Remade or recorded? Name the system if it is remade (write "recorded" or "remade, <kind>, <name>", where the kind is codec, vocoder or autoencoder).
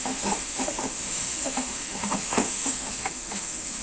remade, autoencoder, DAC-VAE